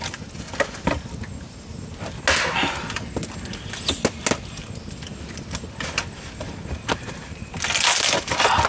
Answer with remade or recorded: recorded